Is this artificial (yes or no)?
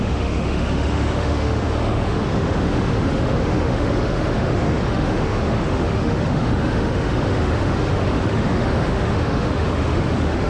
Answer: yes